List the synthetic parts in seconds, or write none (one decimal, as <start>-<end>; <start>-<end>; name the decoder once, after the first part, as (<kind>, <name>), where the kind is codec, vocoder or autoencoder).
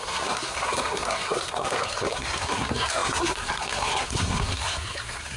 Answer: 0.0-5.4 (codec, SNAC)